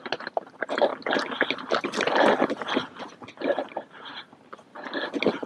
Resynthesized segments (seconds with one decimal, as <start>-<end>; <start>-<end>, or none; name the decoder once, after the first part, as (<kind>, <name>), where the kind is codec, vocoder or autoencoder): none